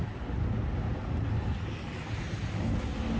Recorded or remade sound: recorded